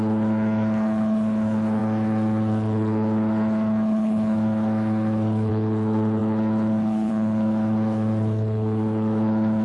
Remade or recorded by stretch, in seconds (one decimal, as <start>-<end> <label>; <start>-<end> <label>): 0.0-9.6 remade